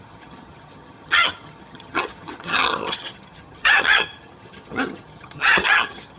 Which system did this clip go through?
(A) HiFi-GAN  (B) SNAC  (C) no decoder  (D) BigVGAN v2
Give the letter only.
A